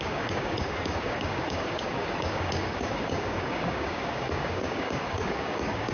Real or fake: fake